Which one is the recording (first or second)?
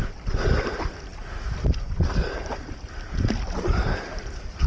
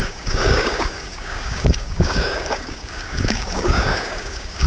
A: first